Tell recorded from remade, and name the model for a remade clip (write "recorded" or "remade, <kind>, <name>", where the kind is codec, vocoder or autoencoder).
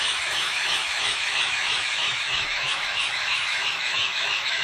remade, autoencoder, DAC-VAE